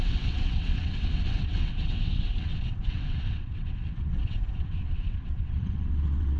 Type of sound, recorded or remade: remade